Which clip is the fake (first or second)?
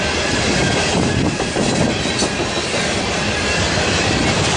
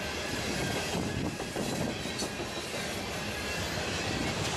first